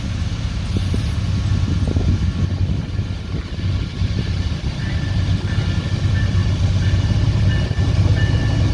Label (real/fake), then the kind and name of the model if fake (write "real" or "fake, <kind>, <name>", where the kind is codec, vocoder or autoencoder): real